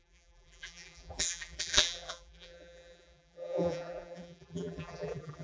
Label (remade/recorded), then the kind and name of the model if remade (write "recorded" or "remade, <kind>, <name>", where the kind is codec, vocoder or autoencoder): remade, vocoder, BigVGAN v2